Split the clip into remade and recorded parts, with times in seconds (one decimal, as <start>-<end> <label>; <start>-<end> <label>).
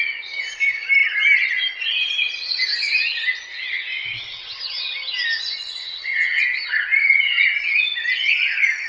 0.0-3.5 recorded; 3.5-4.6 remade; 4.6-5.8 recorded; 5.8-6.4 remade; 6.4-8.9 recorded